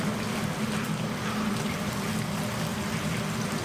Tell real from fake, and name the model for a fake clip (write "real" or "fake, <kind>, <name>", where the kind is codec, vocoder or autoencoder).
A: real